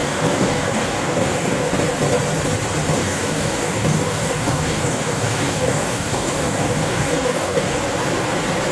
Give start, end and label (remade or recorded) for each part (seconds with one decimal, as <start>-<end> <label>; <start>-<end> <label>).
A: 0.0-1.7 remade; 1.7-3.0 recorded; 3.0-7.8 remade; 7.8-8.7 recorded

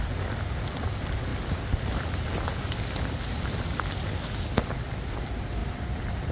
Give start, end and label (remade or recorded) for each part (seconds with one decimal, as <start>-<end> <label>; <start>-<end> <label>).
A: 0.0-6.3 recorded

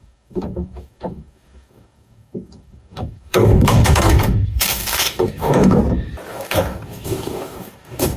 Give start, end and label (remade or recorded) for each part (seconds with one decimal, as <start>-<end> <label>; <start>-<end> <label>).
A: 0.0-5.8 remade; 5.8-6.3 recorded; 6.3-8.2 remade

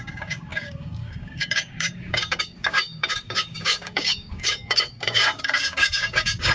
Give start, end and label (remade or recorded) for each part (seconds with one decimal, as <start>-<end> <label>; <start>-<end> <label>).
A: 0.0-6.5 remade